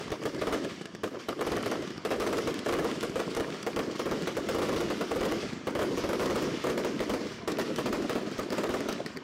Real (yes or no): no